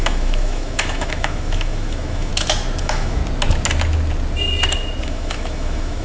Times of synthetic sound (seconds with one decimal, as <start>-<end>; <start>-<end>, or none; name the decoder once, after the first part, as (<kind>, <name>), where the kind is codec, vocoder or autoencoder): 0.0-2.3 (autoencoder, DAC-VAE); 2.8-3.2; 5.0-6.0